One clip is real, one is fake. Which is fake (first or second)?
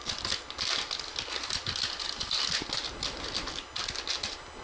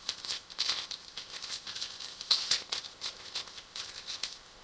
second